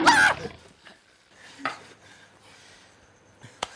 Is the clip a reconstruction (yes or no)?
yes